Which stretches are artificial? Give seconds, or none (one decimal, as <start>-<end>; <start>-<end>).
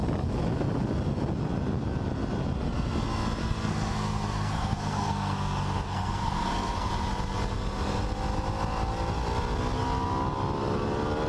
3.4-6.9